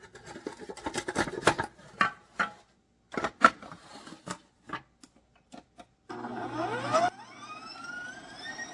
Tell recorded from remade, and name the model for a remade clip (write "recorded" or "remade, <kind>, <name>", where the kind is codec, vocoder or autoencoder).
recorded